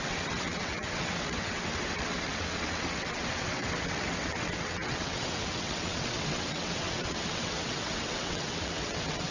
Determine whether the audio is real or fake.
fake